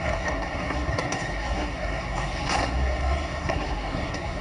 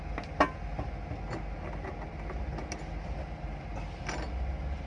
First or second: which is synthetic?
first